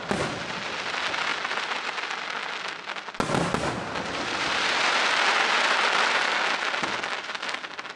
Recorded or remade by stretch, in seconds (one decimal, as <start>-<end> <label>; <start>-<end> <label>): 0.0-8.0 recorded